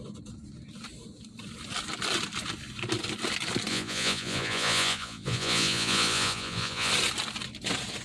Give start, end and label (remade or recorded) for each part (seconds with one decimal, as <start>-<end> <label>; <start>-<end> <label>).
0.0-3.7 recorded; 3.7-6.9 remade; 6.9-8.0 recorded

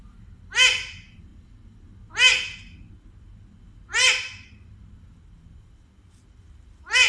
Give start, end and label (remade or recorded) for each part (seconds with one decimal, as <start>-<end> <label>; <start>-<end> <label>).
0.0-7.1 recorded

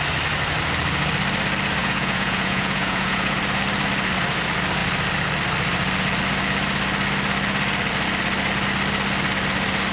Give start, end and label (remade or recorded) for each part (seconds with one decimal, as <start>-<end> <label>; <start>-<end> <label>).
0.0-1.8 recorded; 1.8-3.4 remade; 3.4-9.9 recorded

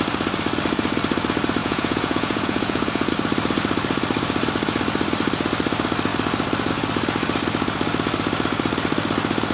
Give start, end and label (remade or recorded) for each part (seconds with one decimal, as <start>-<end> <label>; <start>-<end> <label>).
0.0-1.6 recorded; 1.6-3.1 remade; 3.1-9.5 recorded

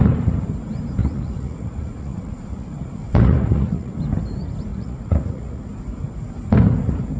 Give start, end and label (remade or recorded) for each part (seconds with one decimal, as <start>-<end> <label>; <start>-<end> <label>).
0.0-1.0 recorded; 1.0-4.0 remade; 4.0-4.7 recorded; 4.7-5.6 remade; 5.6-7.2 recorded

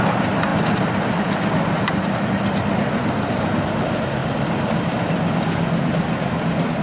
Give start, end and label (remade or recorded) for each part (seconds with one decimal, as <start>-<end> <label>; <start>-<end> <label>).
0.0-6.8 recorded

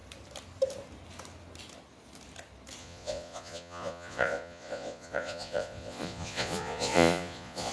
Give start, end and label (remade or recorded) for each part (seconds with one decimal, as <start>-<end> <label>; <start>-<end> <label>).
0.0-2.8 recorded; 2.8-7.7 remade

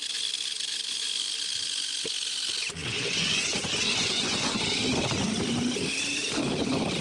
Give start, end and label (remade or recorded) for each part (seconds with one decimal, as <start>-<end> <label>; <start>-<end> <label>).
0.0-2.8 recorded; 2.8-4.6 remade; 4.6-7.0 recorded